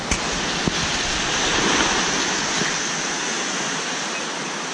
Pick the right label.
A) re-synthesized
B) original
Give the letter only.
B